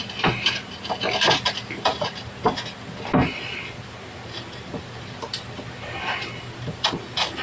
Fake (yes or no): no